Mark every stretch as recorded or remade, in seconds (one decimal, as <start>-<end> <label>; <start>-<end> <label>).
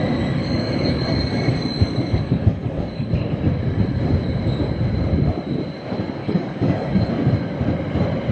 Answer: 0.0-0.4 recorded; 0.4-1.1 remade; 1.1-1.8 recorded; 1.8-3.1 remade; 3.1-6.2 recorded; 6.2-7.1 remade; 7.1-8.3 recorded